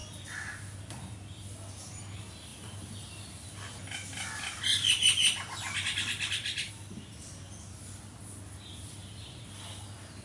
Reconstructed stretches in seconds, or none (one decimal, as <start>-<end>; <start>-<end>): 2.5-6.7; 9.0-9.6